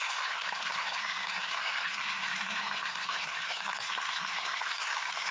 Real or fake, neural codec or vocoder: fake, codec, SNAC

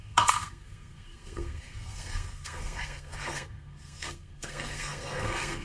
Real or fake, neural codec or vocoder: fake, codec, SNAC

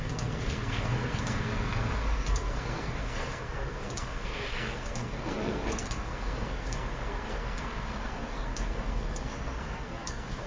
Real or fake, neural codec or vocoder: fake, codec, SNAC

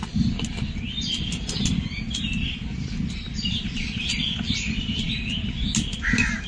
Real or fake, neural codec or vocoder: real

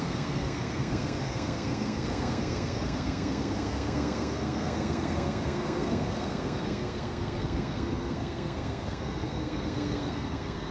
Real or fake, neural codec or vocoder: fake, codec, SNAC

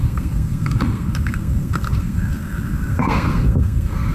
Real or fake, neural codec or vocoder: fake, codec, SNAC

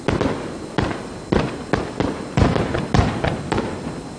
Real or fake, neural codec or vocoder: real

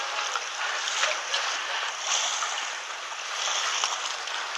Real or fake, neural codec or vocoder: real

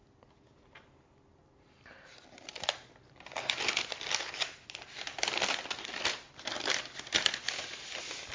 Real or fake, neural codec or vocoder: real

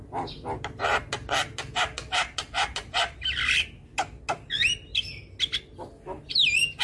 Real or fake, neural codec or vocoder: real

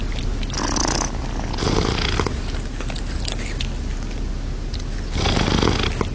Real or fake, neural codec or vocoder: real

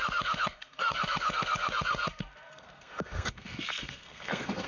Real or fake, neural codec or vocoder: fake, codec, SNAC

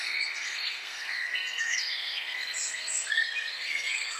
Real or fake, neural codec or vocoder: fake, codec, SNAC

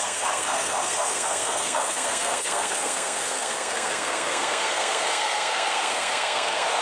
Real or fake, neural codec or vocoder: fake, codec, SNAC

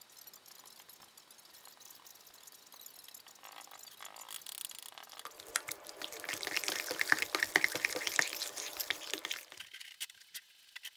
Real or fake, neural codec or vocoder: real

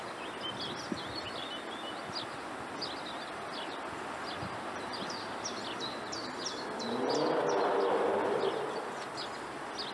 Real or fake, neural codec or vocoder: real